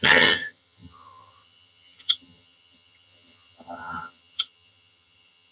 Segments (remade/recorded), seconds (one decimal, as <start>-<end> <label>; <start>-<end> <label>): 0.0-5.5 remade